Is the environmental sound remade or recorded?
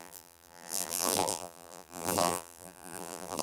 remade